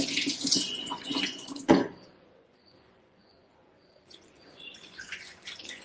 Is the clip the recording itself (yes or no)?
no